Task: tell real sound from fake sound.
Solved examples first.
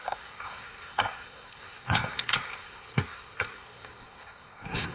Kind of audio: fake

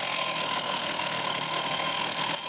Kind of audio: fake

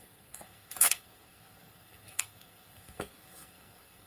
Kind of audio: fake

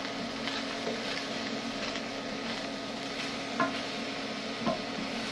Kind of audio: real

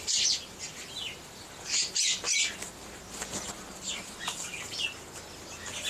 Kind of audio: real